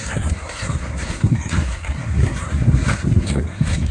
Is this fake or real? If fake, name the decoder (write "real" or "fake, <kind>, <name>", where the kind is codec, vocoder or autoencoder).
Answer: fake, codec, SNAC